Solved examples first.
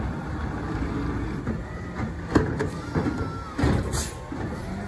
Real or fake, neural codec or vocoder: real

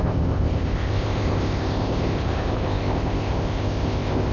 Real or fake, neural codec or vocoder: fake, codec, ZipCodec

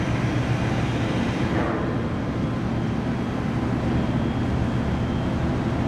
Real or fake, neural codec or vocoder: real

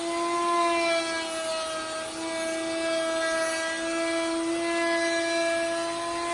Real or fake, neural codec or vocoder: real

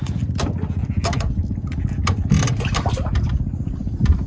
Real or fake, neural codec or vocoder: real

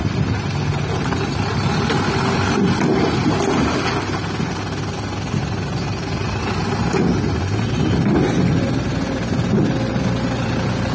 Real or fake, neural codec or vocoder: real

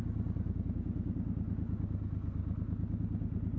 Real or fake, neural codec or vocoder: real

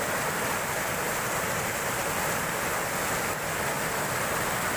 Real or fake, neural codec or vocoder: real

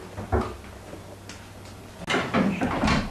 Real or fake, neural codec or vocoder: real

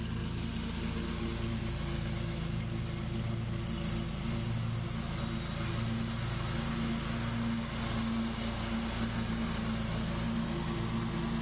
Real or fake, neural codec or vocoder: real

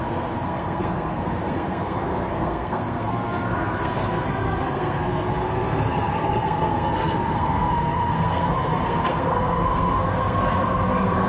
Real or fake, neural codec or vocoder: fake, codec, SNAC